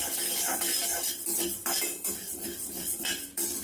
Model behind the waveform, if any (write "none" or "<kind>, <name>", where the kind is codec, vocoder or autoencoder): vocoder, BigVGAN v2